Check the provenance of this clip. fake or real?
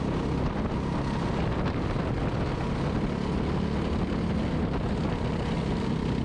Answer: real